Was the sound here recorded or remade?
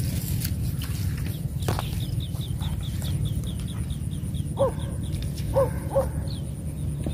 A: recorded